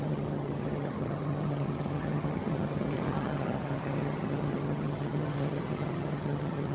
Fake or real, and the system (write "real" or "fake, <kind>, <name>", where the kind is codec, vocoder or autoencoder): fake, vocoder, HiFi-GAN